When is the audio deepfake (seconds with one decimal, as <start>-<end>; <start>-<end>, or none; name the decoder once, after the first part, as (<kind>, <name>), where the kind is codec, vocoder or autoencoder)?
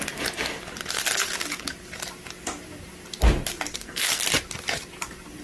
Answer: 3.7-4.2 (codec, SNAC)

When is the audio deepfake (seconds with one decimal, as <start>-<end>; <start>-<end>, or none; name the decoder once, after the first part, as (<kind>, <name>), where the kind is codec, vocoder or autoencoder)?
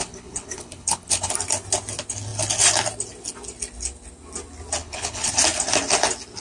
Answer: 0.0-1.3 (codec, HILCodec); 4.8-5.3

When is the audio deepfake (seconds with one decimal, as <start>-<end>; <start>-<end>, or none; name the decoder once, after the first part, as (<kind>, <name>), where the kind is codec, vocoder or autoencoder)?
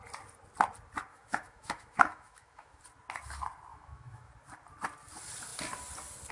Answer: 1.1-2.8 (autoencoder, DAC-VAE); 3.7-4.3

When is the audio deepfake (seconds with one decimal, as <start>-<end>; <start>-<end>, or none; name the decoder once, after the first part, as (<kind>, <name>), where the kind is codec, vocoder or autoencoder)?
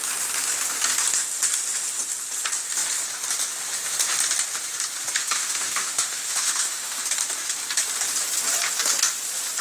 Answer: 5.2-7.0 (autoencoder, DAC-VAE)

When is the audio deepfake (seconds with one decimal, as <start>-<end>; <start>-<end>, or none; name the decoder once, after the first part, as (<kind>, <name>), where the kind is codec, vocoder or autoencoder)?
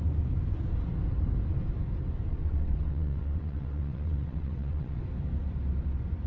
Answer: 2.4-5.0 (vocoder, WaveNeXt)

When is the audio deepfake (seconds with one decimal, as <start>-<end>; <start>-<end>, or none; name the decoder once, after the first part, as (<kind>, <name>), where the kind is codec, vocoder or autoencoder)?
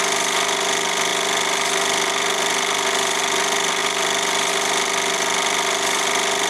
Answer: 0.0-6.5 (vocoder, BigVGAN v2)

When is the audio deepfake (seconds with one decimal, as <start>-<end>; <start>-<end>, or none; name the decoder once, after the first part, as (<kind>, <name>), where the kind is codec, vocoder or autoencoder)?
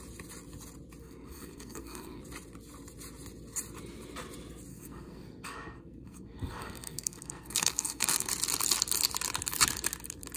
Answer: 1.0-2.2 (codec, SNAC); 4.7-8.3